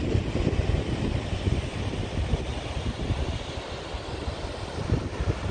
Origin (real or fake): real